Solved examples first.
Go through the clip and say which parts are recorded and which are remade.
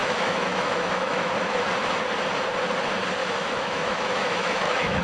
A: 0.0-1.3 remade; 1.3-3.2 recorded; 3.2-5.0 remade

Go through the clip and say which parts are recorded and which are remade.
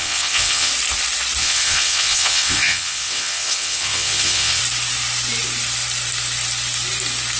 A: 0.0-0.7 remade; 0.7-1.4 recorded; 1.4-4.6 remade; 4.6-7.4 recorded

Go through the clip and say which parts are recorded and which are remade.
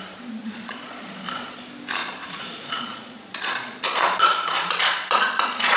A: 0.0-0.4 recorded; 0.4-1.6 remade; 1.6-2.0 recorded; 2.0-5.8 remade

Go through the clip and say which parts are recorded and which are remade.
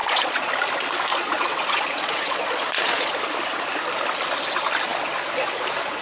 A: 0.0-0.5 remade; 0.5-1.1 recorded; 1.1-3.2 remade; 3.2-6.0 recorded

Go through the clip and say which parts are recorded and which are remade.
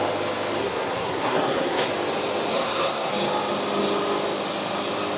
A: 0.0-0.6 recorded; 0.6-1.9 remade; 1.9-2.5 recorded; 2.5-3.1 remade; 3.1-5.2 recorded